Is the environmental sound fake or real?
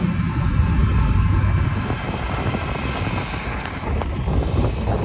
real